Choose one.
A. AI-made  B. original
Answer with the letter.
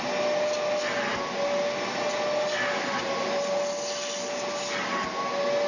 B